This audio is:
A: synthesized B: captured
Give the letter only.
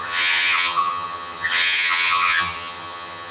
A